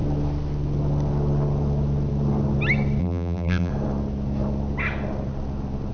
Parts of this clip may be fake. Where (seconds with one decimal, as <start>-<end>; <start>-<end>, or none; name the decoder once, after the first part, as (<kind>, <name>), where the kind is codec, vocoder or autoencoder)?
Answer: 3.0-3.7 (vocoder, BigVGAN v2)